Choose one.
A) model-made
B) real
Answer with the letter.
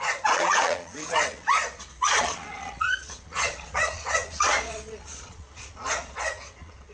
A